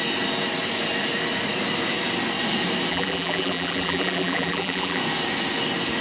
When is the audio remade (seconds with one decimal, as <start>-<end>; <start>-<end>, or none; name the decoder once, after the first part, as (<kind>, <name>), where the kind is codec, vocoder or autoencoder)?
2.9-5.0 (vocoder, BigVGAN v2)